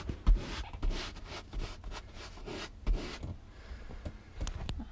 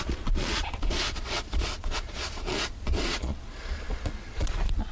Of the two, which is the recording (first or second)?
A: first